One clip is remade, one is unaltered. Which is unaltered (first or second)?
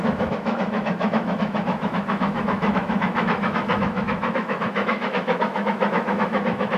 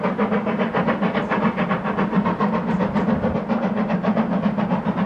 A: second